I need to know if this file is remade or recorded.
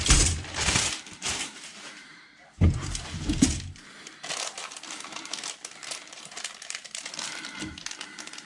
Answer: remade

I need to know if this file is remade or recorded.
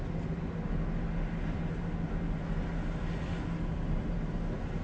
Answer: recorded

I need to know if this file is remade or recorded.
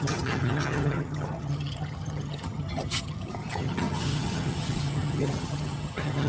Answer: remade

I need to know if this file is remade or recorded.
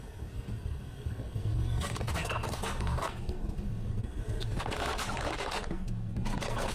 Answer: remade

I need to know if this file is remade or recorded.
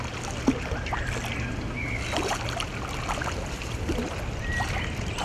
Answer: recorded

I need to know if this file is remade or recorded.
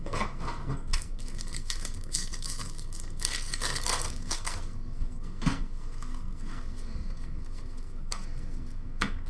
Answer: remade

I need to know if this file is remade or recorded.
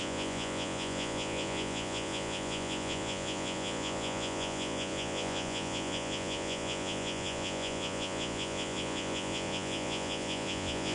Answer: remade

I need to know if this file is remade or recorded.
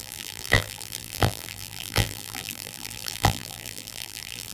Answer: remade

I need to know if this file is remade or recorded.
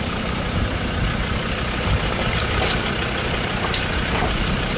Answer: remade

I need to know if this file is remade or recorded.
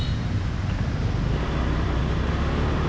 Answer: recorded